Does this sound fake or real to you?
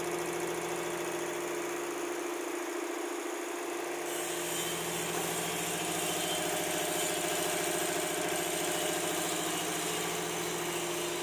real